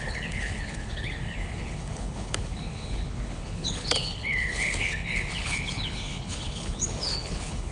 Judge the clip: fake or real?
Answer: fake